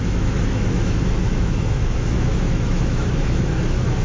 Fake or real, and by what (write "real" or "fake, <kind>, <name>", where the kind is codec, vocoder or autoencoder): fake, autoencoder, DAC-VAE